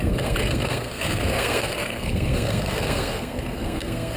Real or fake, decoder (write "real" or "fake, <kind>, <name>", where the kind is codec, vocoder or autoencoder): fake, codec, SNAC